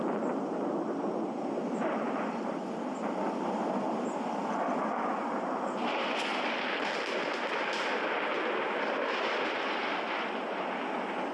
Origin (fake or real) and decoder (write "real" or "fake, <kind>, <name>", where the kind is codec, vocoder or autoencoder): real